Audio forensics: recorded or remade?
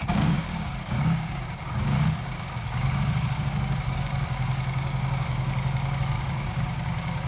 remade